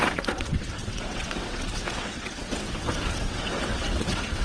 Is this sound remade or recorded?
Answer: remade